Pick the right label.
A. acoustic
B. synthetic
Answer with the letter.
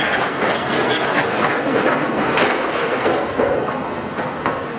B